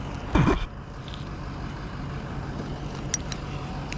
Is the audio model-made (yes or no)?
no